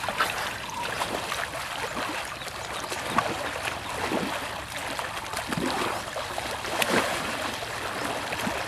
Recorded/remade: recorded